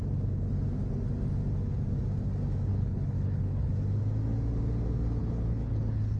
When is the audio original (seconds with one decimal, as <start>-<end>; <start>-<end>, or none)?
0.0-2.7; 3.7-5.2